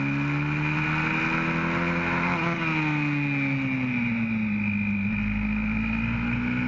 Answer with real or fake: real